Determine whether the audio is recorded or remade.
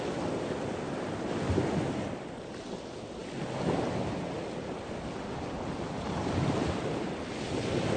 recorded